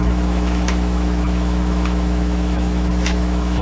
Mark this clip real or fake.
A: fake